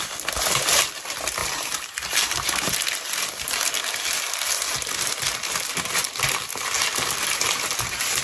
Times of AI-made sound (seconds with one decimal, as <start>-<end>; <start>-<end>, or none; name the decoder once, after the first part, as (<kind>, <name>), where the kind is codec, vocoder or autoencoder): 1.4-2.8 (vocoder, BigVGAN v2)